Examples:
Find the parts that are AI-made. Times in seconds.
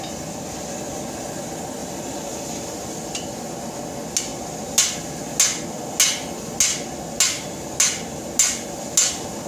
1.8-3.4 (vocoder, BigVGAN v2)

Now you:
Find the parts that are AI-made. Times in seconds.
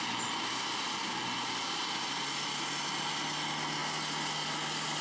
none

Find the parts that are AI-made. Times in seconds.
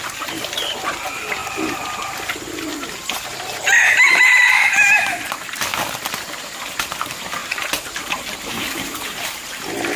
0.0-1.4 (vocoder, BigVGAN v2); 3.8-5.7; 6.9-10.0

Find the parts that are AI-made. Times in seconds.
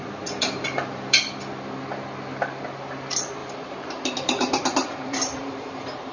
0.0-1.2 (vocoder, BigVGAN v2); 3.4-6.1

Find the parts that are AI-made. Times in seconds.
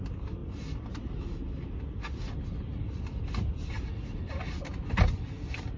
none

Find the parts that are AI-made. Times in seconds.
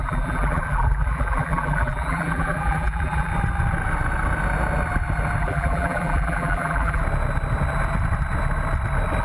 0.0-3.3 (vocoder, BigVGAN v2); 5.4-7.0